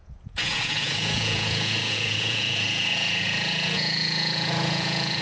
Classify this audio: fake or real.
fake